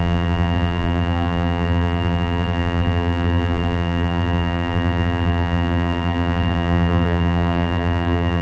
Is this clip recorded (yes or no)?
no